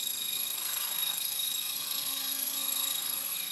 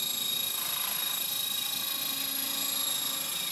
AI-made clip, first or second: first